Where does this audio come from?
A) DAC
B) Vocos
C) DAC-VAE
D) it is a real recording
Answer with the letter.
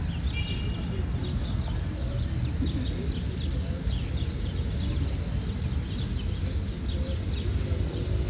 D